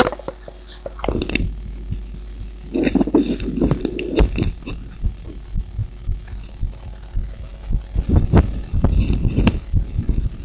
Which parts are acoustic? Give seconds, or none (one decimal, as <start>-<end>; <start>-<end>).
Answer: 0.0-10.4